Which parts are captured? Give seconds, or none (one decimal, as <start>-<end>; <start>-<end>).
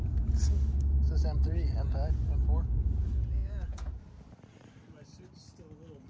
0.0-3.4; 4.0-6.1